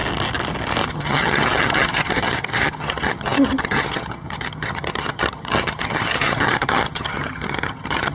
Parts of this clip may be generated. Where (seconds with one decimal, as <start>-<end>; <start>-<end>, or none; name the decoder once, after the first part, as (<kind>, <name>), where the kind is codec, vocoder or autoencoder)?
0.9-8.1 (vocoder, HiFi-GAN)